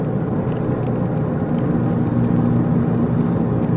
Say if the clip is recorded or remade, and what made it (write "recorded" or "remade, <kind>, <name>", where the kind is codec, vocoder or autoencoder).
recorded